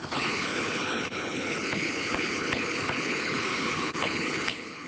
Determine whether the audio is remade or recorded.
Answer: remade